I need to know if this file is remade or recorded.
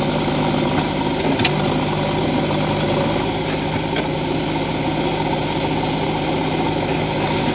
recorded